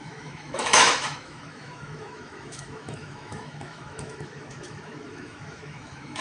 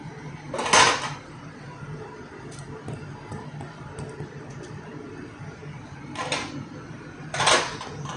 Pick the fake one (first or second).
first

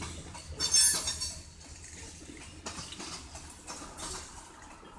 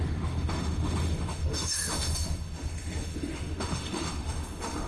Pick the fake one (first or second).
second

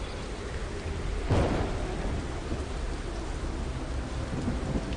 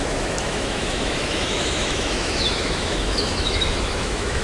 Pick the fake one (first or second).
second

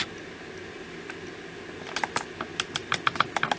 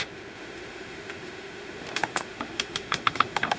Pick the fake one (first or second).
second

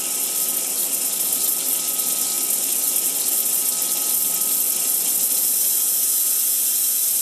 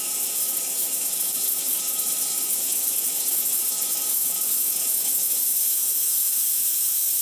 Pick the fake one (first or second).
second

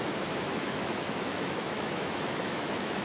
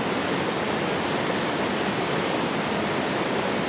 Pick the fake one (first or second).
first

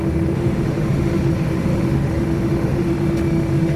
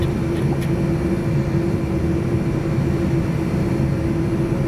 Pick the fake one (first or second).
first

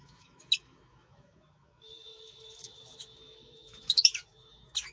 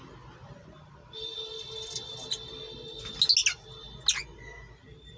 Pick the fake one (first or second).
first